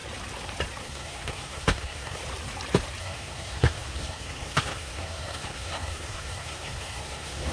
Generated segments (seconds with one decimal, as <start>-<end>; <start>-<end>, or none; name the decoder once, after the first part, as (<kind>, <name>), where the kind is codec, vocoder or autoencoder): 0.8-2.2 (codec, SNAC); 3.0-7.5